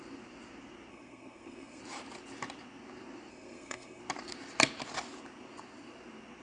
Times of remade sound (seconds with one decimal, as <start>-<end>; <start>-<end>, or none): 0.9-1.8; 3.3-4.0